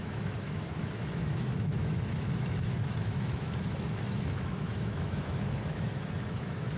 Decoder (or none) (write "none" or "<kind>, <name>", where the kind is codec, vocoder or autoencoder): autoencoder, DAC-VAE